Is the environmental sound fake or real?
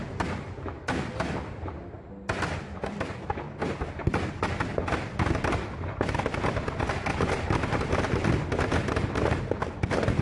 real